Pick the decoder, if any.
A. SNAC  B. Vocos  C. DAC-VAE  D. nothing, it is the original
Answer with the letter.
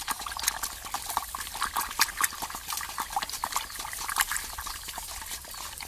D